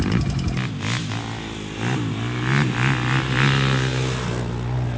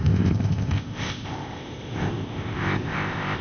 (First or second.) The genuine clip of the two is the first